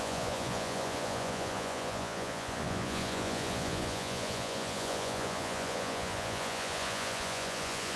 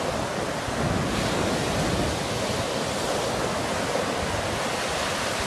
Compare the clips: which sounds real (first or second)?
second